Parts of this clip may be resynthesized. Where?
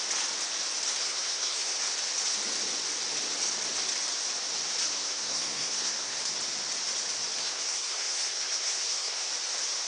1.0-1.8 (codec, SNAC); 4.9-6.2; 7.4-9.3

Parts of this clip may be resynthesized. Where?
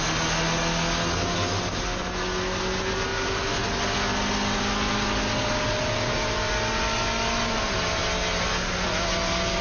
none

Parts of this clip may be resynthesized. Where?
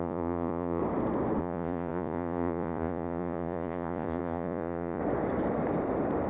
0.0-0.8 (vocoder, Vocos); 1.4-5.0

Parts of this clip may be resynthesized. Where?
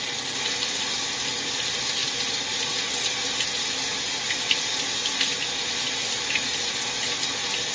none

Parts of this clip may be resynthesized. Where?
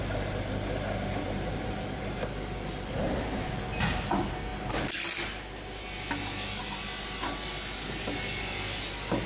1.1-3.5 (vocoder, BigVGAN v2)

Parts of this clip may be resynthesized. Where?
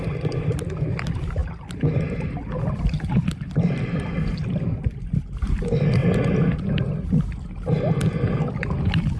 1.4-5.6 (vocoder, BigVGAN v2)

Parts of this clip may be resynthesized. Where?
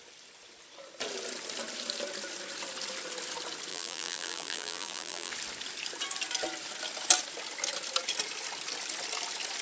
3.7-5.3 (vocoder, BigVGAN v2)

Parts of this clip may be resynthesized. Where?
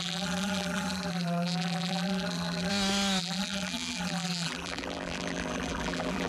0.0-2.7 (vocoder, BigVGAN v2); 3.2-6.3